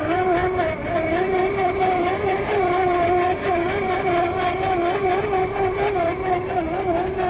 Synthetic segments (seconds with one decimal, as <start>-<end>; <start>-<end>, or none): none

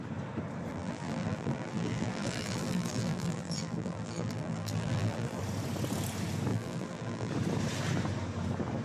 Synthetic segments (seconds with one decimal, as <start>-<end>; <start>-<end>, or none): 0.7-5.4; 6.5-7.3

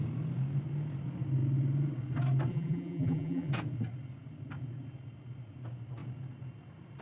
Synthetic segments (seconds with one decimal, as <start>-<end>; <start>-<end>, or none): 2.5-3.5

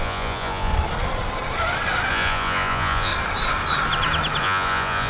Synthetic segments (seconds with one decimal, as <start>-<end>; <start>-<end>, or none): 0.0-0.7; 2.1-3.1; 4.4-5.1